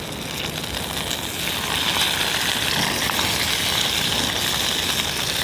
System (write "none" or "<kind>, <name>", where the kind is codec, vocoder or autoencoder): none